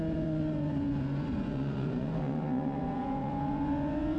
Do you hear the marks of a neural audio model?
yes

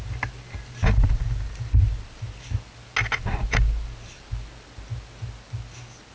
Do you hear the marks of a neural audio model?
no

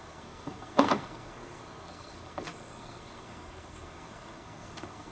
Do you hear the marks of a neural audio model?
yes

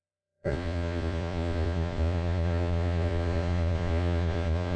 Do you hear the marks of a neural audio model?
yes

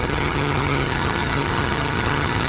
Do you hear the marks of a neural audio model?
yes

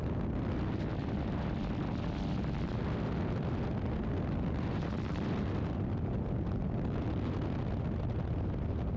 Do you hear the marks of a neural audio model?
no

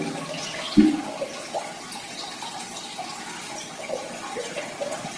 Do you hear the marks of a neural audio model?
no